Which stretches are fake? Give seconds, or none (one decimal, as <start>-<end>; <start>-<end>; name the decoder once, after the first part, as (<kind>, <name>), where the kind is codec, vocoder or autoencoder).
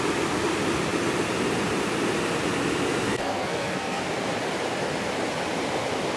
3.1-4.0 (codec, SNAC)